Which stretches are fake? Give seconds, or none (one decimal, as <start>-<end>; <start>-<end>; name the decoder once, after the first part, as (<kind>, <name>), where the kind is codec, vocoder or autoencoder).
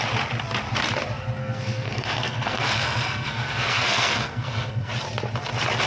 1.4-4.9 (codec, SNAC)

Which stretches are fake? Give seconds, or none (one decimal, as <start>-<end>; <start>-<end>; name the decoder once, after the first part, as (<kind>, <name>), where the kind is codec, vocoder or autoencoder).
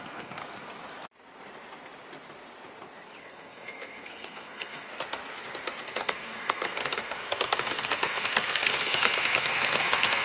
0.0-0.4 (codec, SNAC); 3.2-4.9; 5.8-10.2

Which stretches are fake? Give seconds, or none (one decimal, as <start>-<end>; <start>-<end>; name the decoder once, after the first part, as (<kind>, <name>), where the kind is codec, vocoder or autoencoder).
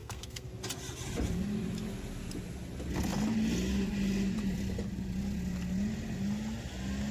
0.0-0.5 (codec, SNAC)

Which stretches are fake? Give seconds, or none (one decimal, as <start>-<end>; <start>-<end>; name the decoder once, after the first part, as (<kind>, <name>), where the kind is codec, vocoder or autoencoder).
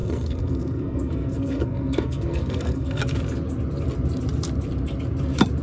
0.0-3.0 (codec, SNAC)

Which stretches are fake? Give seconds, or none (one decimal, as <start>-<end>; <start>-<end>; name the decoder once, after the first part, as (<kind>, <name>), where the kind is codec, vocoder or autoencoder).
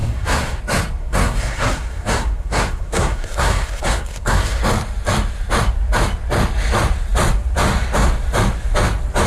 0.0-0.6 (codec, SNAC); 1.0-4.6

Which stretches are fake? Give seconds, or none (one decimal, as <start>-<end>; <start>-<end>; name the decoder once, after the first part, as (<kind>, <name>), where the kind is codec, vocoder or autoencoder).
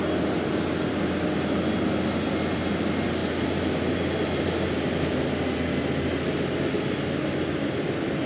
none